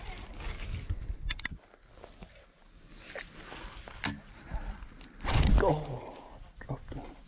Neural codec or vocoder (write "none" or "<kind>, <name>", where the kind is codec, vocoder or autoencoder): none